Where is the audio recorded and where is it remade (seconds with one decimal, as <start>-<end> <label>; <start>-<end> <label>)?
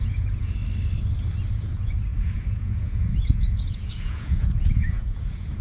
0.0-0.6 remade; 0.6-1.5 recorded; 1.5-5.6 remade